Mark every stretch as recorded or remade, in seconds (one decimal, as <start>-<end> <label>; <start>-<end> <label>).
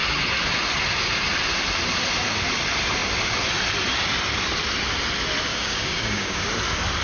0.0-5.5 recorded; 5.5-6.5 remade; 6.5-7.0 recorded